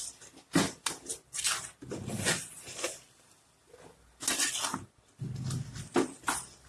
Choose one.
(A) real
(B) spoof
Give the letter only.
A